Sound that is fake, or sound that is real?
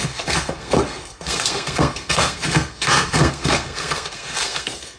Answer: fake